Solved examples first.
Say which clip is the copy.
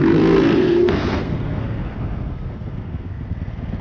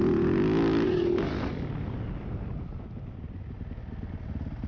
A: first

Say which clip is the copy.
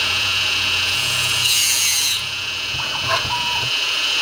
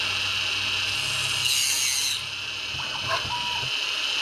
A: first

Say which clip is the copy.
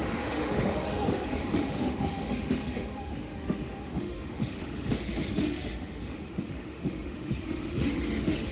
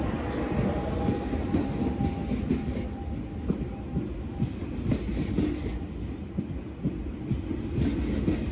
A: first